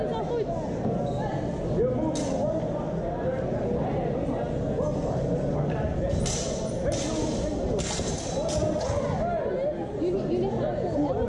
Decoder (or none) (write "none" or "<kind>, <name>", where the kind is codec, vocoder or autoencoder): none